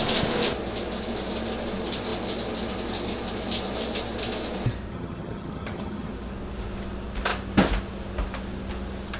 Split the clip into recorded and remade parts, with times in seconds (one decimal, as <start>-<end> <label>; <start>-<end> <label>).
0.0-4.9 recorded; 4.9-6.1 remade; 6.1-9.2 recorded